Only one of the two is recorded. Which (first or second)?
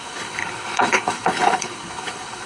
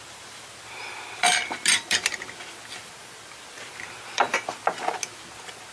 second